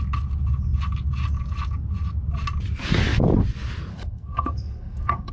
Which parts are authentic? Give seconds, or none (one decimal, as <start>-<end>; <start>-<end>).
0.0-3.9